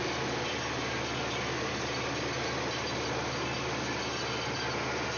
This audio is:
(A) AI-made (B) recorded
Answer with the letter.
B